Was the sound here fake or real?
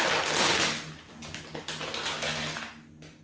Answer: real